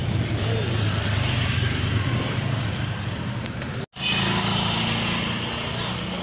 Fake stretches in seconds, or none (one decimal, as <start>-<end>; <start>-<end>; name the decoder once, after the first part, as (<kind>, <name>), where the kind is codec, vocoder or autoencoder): 0.0-3.2 (vocoder, BigVGAN v2)